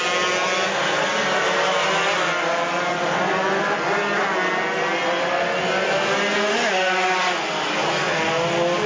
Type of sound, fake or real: real